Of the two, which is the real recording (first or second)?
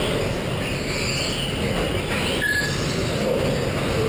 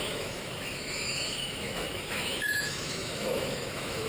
first